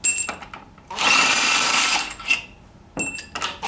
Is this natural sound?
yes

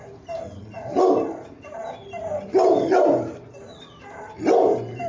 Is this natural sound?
yes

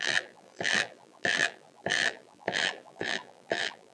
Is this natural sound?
no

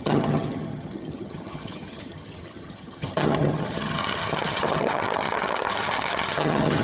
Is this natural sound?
no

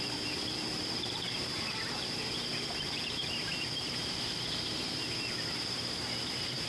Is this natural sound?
no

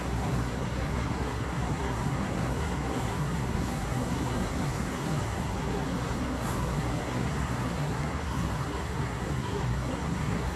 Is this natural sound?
no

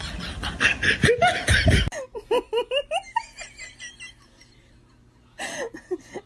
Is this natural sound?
yes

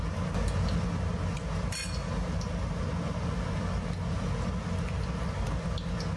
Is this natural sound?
yes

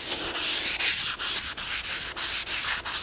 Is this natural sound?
yes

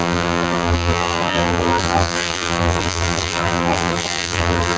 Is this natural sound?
no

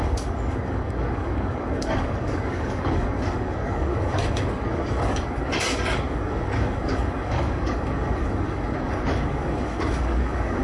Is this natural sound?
no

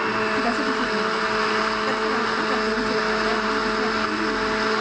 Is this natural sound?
yes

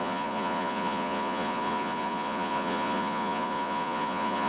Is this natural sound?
no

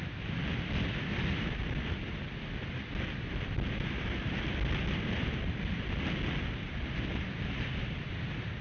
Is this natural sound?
yes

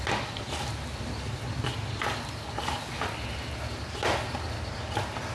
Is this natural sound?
yes